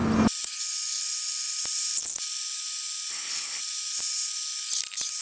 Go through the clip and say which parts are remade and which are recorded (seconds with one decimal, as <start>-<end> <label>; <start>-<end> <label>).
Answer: 0.0-3.1 recorded; 3.1-3.6 remade; 3.6-5.2 recorded

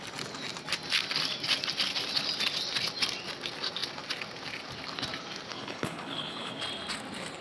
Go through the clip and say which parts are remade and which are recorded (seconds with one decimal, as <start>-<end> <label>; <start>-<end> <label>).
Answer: 0.0-5.5 recorded; 5.5-6.6 remade; 6.6-7.4 recorded

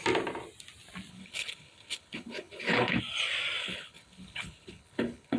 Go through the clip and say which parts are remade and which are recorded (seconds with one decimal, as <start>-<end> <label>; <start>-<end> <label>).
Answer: 0.0-1.1 recorded; 1.1-3.0 remade; 3.0-3.6 recorded; 3.6-5.4 remade